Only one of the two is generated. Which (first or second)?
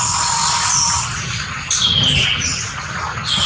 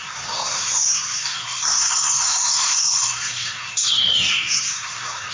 second